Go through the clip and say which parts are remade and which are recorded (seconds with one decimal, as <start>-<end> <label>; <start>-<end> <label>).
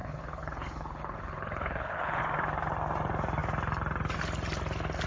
0.0-2.2 remade; 2.2-5.1 recorded